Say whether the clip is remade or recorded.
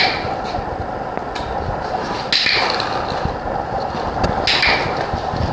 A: recorded